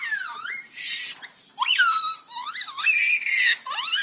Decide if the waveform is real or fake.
real